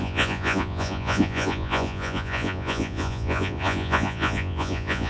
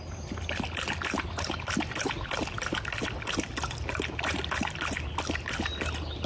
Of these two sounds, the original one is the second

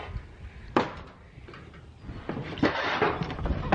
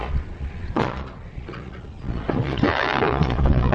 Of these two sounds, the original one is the first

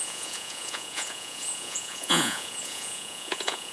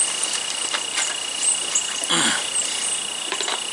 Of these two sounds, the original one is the second